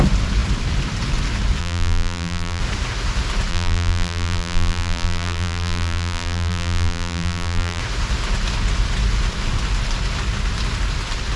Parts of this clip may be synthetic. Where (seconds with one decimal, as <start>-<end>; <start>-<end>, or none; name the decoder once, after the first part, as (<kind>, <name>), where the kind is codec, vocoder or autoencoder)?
1.6-2.6 (vocoder, BigVGAN v2); 3.5-7.8